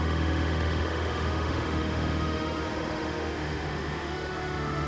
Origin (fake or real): fake